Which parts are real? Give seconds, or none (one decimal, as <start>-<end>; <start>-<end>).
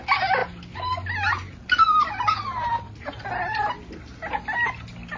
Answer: 0.0-5.2